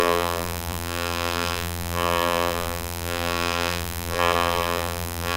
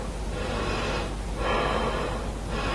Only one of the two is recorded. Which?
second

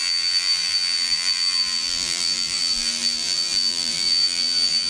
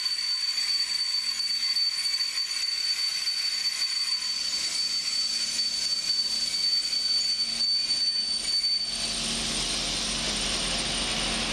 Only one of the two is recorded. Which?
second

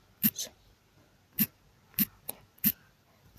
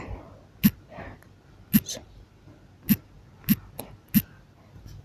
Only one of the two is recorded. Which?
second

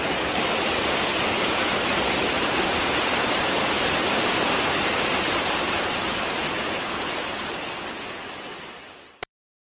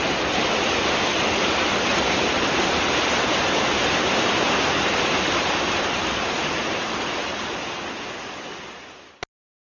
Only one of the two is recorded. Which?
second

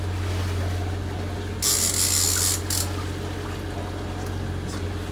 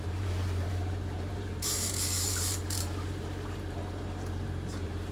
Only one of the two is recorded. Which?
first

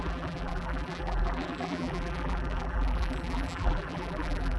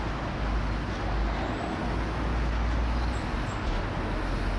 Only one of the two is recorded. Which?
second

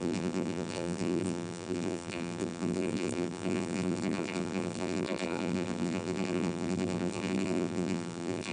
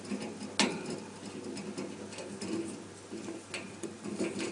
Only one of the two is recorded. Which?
second